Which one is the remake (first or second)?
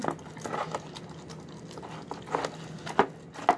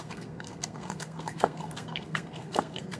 second